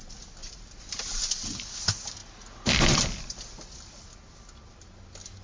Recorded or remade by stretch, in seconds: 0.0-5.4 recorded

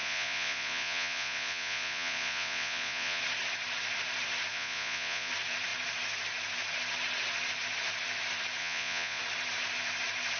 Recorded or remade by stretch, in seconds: 0.0-3.2 remade; 3.2-4.5 recorded; 4.5-5.3 remade; 5.3-8.6 recorded; 8.6-9.2 remade; 9.2-10.4 recorded

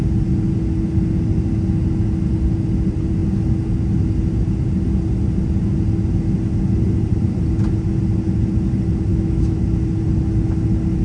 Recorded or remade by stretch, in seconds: 0.0-9.1 recorded; 9.1-9.6 remade; 9.6-11.0 recorded

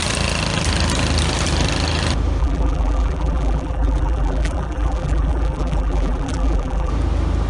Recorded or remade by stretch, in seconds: 0.0-2.4 recorded; 2.4-6.9 remade; 6.9-7.5 recorded

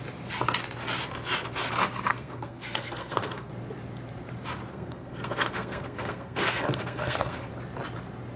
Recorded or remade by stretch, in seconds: 0.0-2.1 recorded; 2.1-3.5 remade; 3.5-4.7 recorded; 4.7-7.5 remade; 7.5-8.4 recorded